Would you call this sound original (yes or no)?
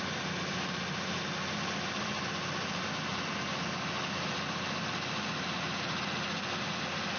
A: yes